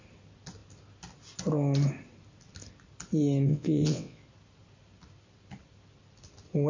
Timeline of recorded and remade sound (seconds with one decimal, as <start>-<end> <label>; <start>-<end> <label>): 0.0-3.5 recorded; 3.5-4.2 remade; 4.2-6.7 recorded